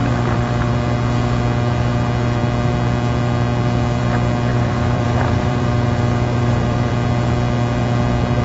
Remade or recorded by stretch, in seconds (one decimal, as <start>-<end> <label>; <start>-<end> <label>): 0.0-0.7 remade; 0.7-4.5 recorded; 4.5-6.9 remade; 6.9-8.4 recorded

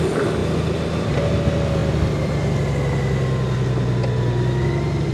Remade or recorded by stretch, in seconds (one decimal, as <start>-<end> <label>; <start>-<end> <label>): 0.0-1.8 recorded; 1.8-5.1 remade